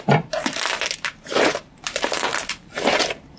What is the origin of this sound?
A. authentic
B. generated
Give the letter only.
B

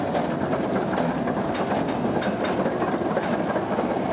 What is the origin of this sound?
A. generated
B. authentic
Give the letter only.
B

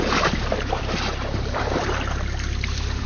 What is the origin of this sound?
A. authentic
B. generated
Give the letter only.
B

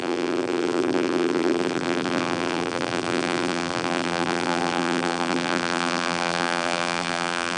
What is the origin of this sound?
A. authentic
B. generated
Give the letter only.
B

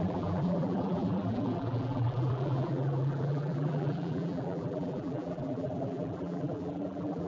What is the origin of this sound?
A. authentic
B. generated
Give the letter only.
B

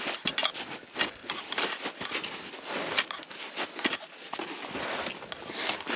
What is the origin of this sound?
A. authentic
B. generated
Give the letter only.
A